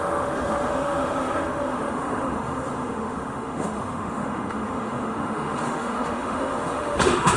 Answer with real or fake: fake